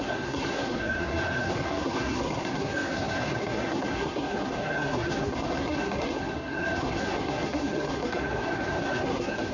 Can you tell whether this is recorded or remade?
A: remade